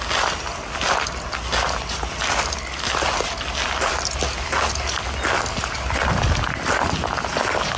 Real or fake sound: real